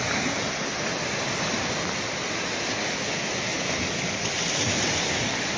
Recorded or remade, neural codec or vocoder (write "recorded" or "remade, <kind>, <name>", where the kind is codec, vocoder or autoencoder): recorded